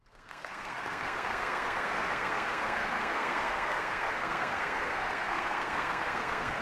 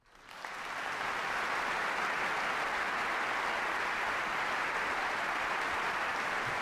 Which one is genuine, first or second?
second